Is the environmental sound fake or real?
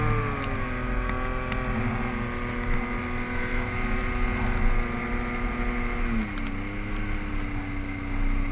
real